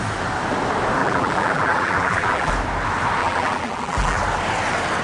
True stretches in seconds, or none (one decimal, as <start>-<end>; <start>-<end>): 0.0-1.0; 2.5-3.2; 4.2-5.0